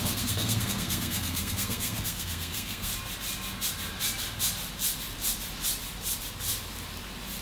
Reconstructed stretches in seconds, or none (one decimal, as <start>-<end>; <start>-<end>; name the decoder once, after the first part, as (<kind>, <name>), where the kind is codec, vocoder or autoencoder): 0.0-2.9 (codec, SNAC)